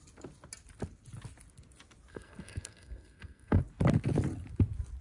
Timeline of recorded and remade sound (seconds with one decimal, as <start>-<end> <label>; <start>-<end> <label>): 0.0-2.1 recorded; 2.1-3.6 remade; 3.6-5.0 recorded